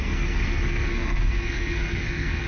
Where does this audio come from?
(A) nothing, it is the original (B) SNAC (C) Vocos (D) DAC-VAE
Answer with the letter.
B